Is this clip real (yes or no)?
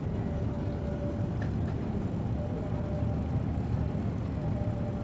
yes